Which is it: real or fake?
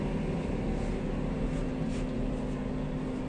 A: real